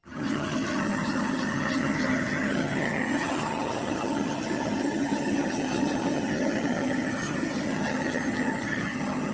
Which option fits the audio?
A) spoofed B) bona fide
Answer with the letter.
A